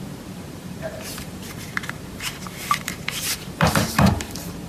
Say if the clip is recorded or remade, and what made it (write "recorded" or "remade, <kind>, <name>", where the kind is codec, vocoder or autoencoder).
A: remade, vocoder, BigVGAN v2